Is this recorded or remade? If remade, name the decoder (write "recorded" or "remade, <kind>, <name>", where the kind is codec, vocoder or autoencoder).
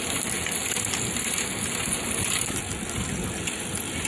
recorded